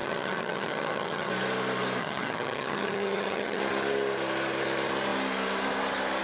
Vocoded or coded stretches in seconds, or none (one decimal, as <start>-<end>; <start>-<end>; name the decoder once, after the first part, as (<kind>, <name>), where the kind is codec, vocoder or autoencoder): 0.0-1.3 (vocoder, HiFi-GAN); 2.0-3.6